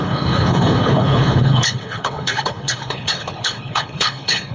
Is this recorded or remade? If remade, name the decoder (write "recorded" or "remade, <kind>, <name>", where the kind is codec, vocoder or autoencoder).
remade, codec, HILCodec